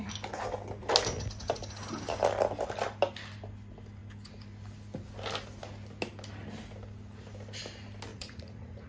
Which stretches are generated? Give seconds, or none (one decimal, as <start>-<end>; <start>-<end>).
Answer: 8.1-8.9